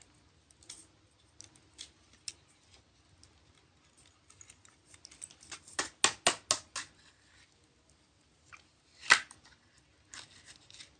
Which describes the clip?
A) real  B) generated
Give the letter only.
A